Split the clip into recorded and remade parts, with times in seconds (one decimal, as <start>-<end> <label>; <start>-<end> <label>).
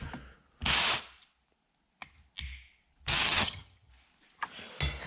0.0-3.1 recorded; 3.1-3.9 remade; 3.9-5.1 recorded